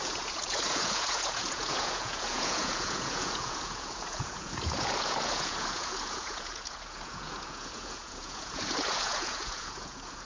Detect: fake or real fake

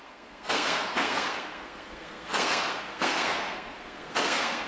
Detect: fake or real fake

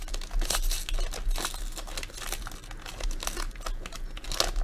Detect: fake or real real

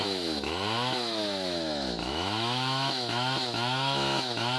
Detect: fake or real fake